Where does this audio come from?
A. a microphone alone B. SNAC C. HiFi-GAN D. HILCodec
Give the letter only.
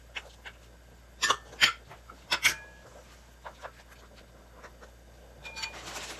A